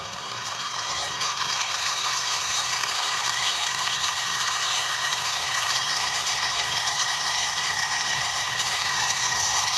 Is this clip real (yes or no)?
no